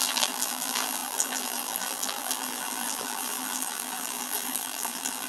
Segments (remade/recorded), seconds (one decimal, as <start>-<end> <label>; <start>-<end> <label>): 0.0-5.3 remade